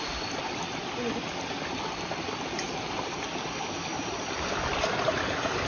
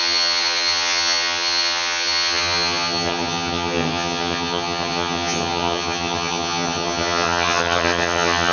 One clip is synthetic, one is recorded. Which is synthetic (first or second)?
second